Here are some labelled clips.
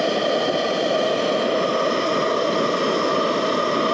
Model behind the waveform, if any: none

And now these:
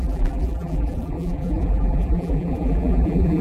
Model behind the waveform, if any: vocoder, BigVGAN v2